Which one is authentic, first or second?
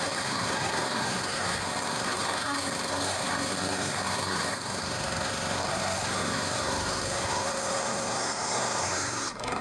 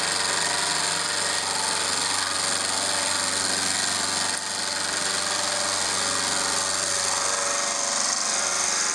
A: second